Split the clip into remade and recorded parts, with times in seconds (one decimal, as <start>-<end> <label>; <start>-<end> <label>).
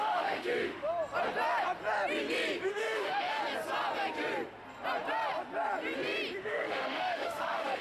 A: 0.0-0.9 remade; 0.9-2.7 recorded; 2.7-3.4 remade; 3.4-6.4 recorded; 6.4-7.8 remade